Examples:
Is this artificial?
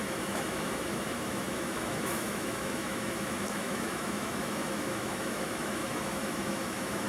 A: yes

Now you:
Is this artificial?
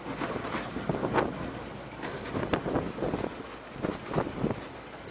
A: no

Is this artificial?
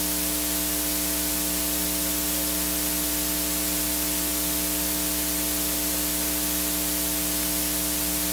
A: no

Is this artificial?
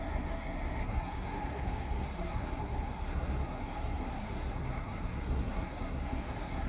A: yes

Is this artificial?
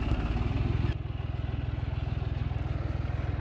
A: no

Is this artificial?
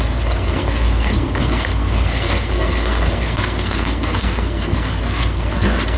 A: yes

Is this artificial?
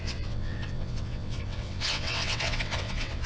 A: yes